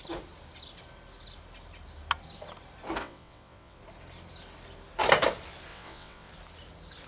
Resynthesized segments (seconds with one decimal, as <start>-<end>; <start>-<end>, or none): 3.0-3.8; 5.7-6.3